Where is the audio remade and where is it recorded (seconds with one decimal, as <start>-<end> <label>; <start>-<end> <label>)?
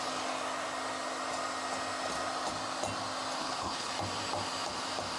0.0-3.4 recorded; 3.4-3.9 remade; 3.9-5.2 recorded